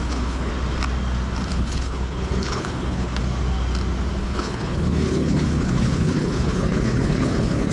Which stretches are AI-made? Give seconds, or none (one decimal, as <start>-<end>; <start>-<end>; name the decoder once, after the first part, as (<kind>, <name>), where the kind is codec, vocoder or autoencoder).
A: 0.0-0.5 (codec, HILCodec); 1.5-3.2; 4.2-7.7